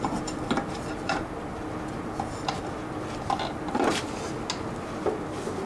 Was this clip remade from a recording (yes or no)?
no